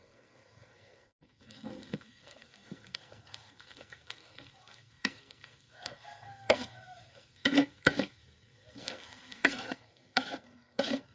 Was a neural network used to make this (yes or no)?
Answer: yes